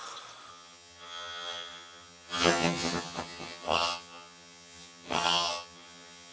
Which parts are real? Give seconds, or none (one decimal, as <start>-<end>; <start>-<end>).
0.0-0.5